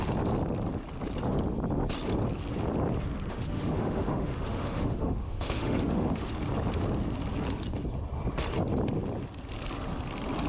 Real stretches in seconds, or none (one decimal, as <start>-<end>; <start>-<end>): 0.0-3.3; 6.3-10.5